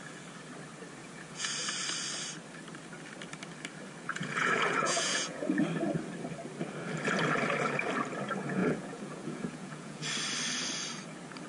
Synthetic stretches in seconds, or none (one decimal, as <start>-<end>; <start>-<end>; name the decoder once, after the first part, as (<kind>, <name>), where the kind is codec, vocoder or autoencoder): 1.0-1.5 (vocoder, Vocos); 4.1-5.6; 8.6-10.1